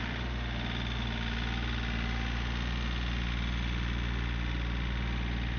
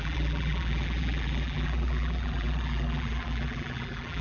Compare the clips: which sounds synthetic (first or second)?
second